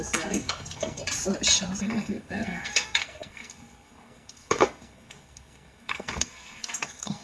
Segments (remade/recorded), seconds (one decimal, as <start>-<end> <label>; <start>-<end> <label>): 0.0-1.0 remade; 1.0-1.8 recorded; 1.8-7.2 remade